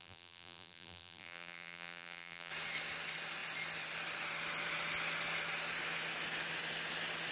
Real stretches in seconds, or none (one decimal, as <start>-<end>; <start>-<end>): 2.5-7.3